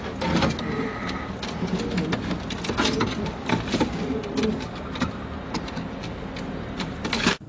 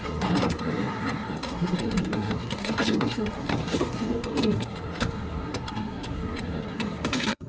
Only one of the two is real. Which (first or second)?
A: first